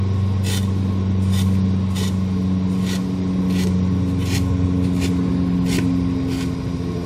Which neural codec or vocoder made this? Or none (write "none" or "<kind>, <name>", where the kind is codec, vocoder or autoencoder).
none